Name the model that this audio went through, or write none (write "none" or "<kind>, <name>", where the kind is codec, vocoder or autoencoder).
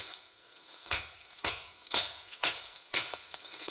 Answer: codec, SNAC